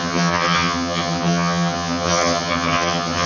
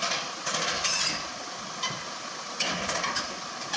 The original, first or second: second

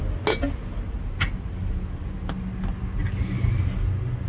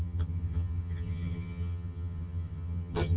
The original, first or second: first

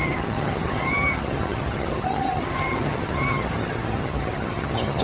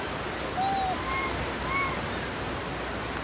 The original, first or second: second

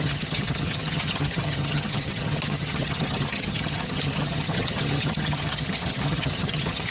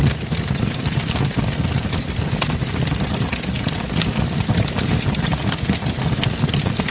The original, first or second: second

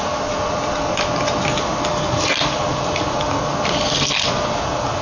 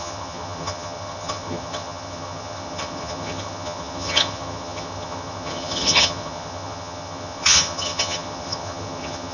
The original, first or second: first